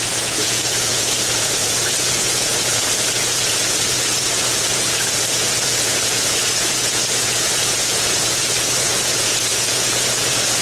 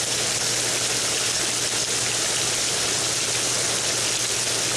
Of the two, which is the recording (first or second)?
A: second